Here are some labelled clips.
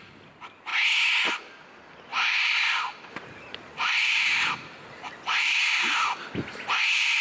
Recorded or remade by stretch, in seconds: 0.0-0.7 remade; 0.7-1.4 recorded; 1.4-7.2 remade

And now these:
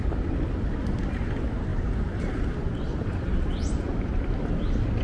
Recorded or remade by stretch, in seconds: 0.0-0.5 remade; 0.5-1.7 recorded; 1.7-2.4 remade; 2.4-2.9 recorded; 2.9-4.1 remade; 4.1-5.0 recorded